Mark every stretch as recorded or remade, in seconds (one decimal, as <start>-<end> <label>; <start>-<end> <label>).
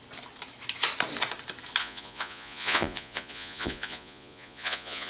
0.0-1.8 recorded; 1.8-5.1 remade